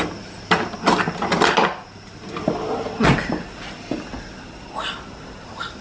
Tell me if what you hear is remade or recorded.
recorded